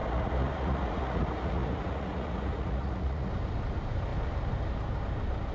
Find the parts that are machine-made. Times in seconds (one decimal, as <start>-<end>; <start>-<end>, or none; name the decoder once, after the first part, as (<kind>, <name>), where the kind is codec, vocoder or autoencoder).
0.0-3.3 (vocoder, Vocos)